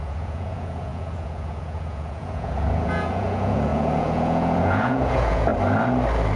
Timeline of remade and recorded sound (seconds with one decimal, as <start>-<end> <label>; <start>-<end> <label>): 0.0-5.5 remade; 5.5-6.4 recorded